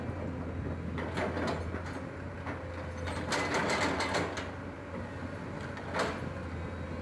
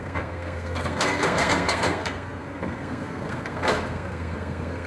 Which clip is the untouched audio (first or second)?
first